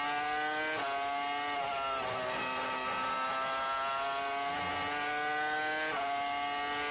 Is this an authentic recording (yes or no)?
yes